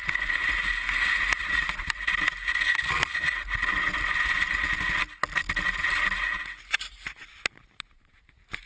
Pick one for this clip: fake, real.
real